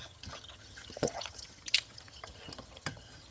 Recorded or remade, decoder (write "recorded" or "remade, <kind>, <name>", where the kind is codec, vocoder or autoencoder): remade, vocoder, HiFi-GAN